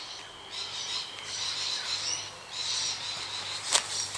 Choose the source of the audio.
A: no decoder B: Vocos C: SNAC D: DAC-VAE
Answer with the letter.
A